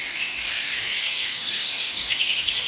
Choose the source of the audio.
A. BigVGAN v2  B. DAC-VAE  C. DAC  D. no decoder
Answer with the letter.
C